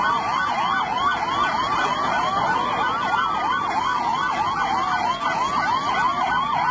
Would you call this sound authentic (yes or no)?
yes